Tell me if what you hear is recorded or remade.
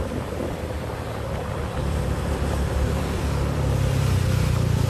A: remade